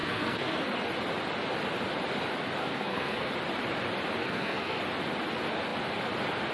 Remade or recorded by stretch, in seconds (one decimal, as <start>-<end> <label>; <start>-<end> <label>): 0.0-0.6 remade; 0.6-2.6 recorded; 2.6-3.3 remade; 3.3-4.2 recorded; 4.2-4.8 remade; 4.8-6.5 recorded